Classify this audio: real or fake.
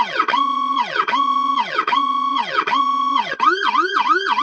fake